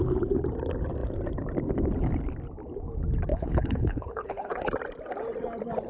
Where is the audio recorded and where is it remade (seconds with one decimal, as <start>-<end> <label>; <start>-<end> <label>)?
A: 0.0-3.3 recorded; 3.3-4.6 remade; 4.6-5.9 recorded